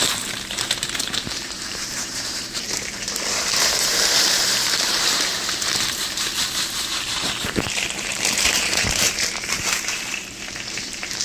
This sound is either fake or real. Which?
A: fake